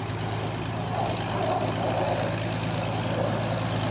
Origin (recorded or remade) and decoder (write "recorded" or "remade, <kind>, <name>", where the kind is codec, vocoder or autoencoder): recorded